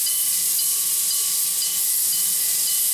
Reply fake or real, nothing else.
real